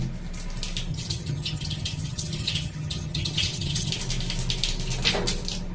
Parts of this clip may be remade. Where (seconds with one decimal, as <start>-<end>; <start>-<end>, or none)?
0.9-3.9